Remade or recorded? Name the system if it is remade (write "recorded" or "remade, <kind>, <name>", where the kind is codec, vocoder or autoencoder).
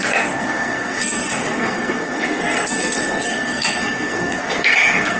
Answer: remade, codec, SNAC